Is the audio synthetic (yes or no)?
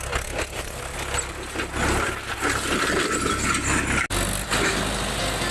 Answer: no